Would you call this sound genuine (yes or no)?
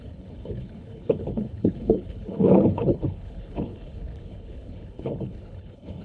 no